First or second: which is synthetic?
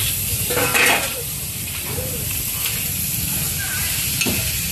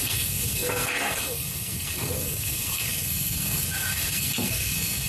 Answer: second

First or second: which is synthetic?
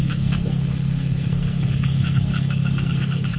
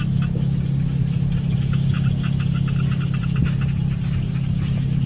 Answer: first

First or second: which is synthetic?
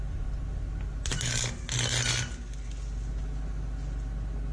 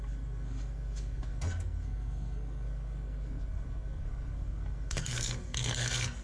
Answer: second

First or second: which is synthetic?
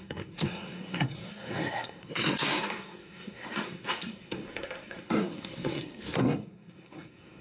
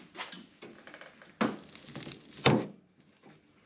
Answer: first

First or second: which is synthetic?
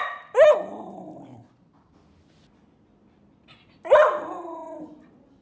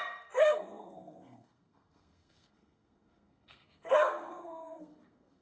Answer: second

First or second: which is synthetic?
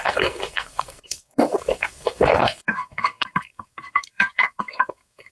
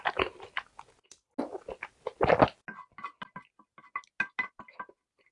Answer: first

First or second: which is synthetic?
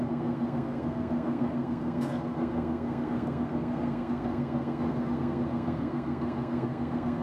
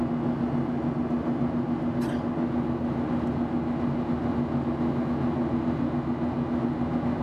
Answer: first